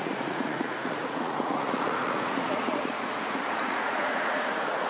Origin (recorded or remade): remade